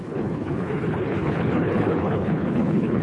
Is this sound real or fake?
fake